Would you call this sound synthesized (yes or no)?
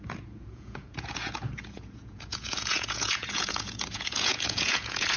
yes